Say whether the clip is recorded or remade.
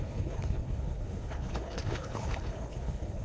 remade